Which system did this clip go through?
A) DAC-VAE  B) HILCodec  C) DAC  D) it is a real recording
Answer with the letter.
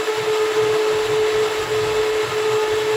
D